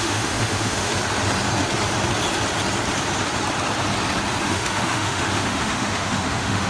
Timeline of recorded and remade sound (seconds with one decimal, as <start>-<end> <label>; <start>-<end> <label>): 0.0-0.9 remade; 0.9-4.4 recorded; 4.4-6.7 remade